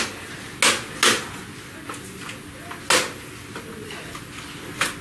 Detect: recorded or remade recorded